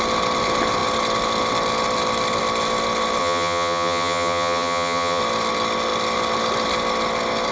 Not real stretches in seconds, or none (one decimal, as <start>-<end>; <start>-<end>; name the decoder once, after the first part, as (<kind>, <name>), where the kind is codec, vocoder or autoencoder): 3.2-5.2 (vocoder, HiFi-GAN)